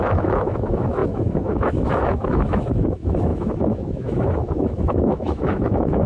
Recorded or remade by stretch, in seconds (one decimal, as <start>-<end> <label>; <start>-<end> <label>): 0.0-6.1 remade